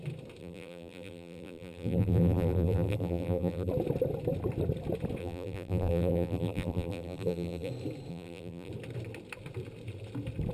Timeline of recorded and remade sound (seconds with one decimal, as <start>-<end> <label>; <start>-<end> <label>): 0.0-0.4 recorded; 0.4-3.7 remade; 3.7-5.2 recorded; 5.2-7.7 remade; 7.7-8.1 recorded; 8.1-8.7 remade; 8.7-10.5 recorded